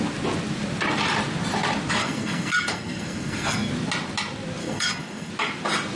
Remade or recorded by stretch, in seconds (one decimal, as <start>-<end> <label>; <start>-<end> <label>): 0.0-2.0 recorded; 2.0-3.7 remade; 3.7-4.6 recorded; 4.6-5.3 remade; 5.3-6.0 recorded